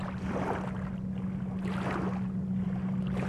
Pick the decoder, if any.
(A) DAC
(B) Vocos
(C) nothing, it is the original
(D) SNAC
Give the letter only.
C